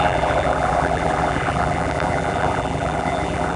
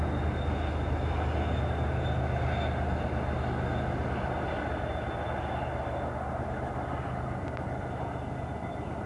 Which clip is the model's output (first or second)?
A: first